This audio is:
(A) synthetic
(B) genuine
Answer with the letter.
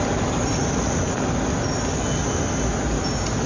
B